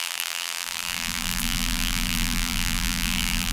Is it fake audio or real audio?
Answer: fake